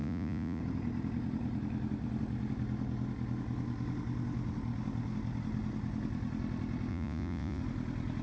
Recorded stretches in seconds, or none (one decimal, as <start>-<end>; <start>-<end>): 0.6-6.9; 7.6-8.2